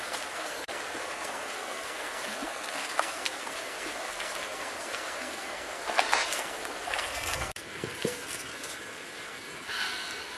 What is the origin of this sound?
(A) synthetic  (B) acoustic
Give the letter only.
A